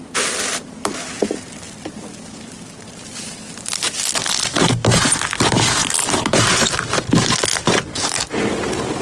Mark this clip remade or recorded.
recorded